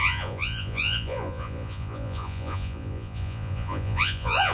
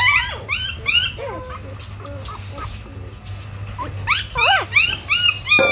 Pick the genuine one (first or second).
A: second